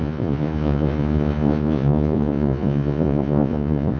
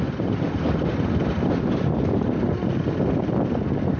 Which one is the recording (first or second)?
second